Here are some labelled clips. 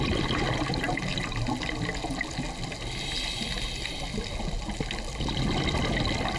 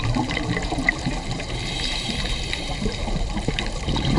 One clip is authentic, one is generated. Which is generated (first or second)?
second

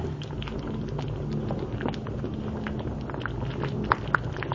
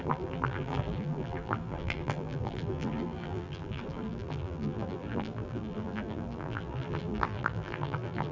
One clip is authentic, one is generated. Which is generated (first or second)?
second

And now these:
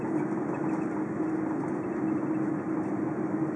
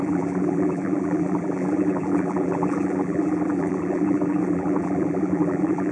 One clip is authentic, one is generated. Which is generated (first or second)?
second